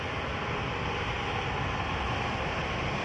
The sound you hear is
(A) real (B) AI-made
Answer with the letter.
A